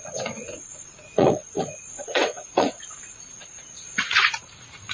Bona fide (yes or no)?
no